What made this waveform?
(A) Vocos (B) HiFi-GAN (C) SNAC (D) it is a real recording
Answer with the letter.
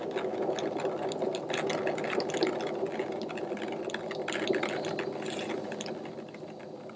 D